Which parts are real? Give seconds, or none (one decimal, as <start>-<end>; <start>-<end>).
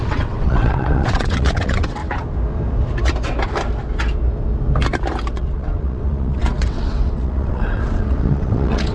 2.0-5.3